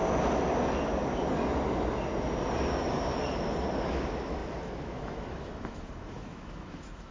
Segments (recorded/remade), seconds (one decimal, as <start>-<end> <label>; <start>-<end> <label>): 0.0-3.9 recorded; 3.9-7.1 remade